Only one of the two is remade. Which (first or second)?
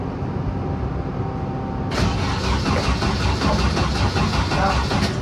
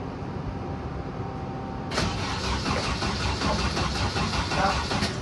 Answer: second